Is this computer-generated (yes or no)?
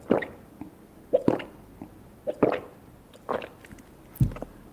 no